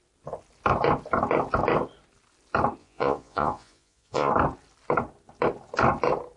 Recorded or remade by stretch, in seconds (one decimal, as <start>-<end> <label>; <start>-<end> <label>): 0.0-2.8 recorded; 2.8-4.3 remade; 4.3-6.4 recorded